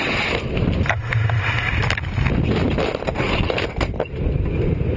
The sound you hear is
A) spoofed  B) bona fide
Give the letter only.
B